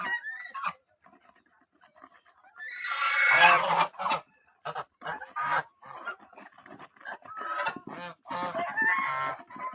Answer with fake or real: real